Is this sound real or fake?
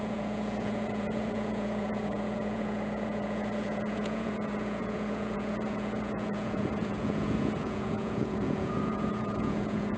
fake